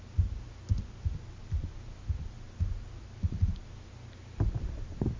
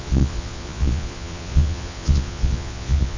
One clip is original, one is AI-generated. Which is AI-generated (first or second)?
second